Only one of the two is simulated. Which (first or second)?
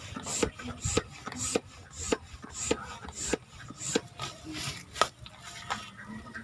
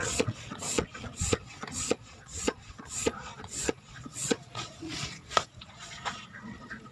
second